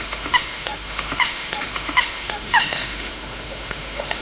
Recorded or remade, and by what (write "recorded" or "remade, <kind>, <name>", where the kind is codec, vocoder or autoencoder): remade, autoencoder, DAC-VAE